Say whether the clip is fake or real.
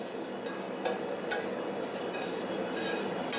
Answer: real